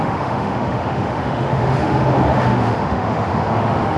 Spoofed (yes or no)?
yes